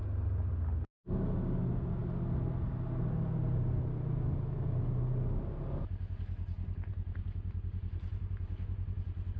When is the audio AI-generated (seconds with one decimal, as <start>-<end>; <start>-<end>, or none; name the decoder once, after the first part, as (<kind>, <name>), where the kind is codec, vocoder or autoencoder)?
6.9-8.5 (vocoder, BigVGAN v2)